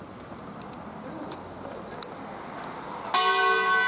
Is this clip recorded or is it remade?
recorded